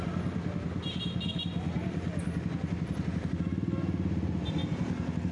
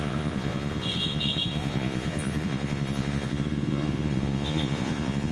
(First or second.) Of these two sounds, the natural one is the first